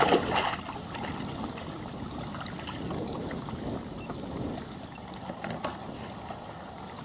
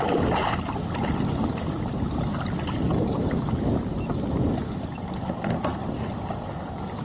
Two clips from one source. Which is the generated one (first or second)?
second